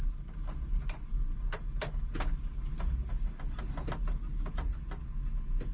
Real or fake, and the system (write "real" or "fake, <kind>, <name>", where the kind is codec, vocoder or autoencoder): real